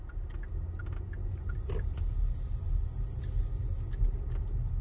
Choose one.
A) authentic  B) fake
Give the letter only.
A